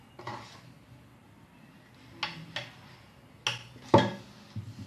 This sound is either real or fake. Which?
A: real